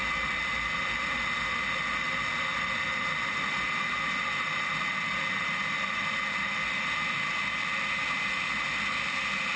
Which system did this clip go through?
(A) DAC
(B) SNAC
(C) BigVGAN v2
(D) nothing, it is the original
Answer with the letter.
D